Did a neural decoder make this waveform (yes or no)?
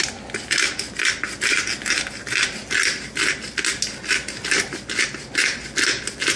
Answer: no